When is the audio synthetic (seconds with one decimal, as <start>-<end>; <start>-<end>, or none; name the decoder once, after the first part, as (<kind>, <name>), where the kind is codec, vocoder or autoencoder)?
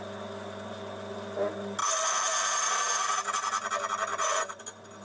1.8-3.2 (vocoder, BigVGAN v2); 4.1-4.6